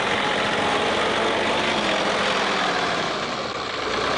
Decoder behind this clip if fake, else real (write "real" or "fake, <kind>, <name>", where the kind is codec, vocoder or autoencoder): real